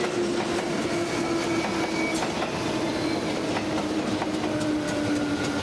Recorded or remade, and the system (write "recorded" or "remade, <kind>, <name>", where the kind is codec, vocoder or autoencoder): recorded